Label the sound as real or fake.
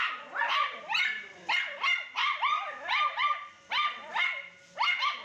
fake